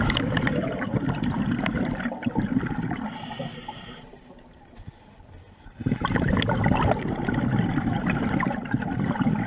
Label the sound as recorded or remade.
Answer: recorded